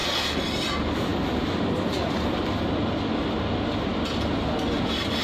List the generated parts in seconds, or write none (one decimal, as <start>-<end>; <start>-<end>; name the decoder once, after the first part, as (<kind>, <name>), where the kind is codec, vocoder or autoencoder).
none